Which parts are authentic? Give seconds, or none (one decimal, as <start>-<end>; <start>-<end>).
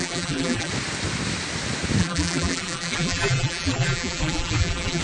0.7-2.0